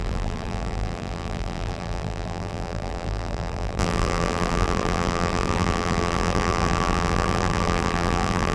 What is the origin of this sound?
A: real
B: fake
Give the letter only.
B